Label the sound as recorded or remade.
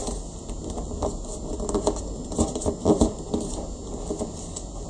remade